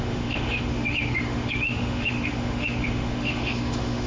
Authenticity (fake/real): fake